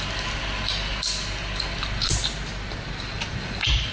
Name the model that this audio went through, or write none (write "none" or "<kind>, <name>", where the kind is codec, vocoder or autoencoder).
none